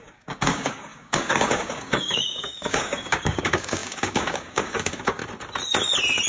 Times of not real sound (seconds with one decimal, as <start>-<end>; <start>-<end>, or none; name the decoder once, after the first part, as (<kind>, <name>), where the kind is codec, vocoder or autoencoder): 0.0-5.2 (codec, DAC)